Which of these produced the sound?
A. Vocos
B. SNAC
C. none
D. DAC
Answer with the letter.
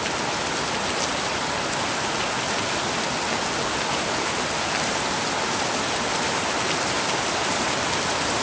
C